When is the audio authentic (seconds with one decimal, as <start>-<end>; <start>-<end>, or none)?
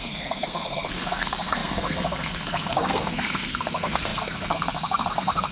none